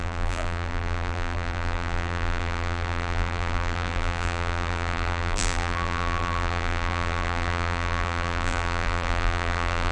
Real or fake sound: fake